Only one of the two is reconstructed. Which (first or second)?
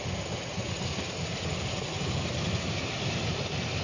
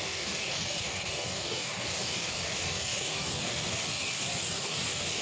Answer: second